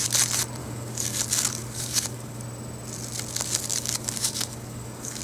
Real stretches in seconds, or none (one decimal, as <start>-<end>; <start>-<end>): 0.0-0.6; 1.2-1.6; 2.4-3.7